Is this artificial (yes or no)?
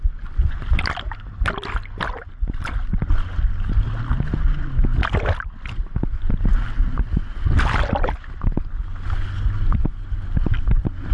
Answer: no